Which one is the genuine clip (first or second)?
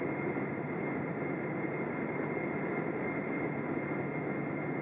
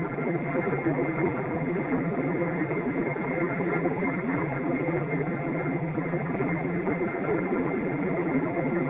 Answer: first